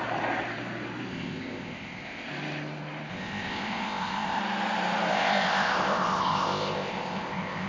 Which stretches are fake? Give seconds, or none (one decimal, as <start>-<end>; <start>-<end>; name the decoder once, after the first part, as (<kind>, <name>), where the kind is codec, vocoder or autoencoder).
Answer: 1.1-2.3 (codec, ZipCodec); 3.1-4.4; 5.1-7.7